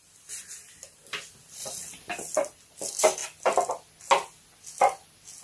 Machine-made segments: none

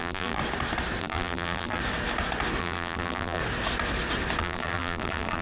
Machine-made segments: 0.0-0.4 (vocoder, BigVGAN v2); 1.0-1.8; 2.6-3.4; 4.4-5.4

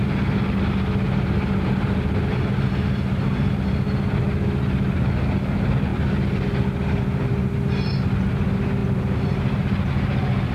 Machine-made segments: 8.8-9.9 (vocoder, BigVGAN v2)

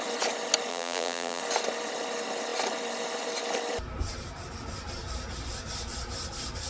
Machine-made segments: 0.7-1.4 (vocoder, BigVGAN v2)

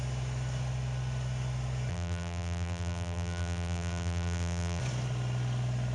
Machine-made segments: 1.9-4.8 (vocoder, BigVGAN v2)

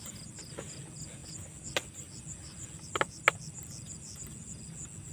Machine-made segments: none